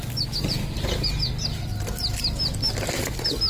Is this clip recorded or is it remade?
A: recorded